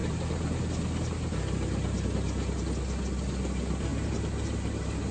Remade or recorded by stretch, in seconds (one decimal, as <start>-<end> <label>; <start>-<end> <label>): 0.0-0.6 remade; 0.6-3.9 recorded; 3.9-5.1 remade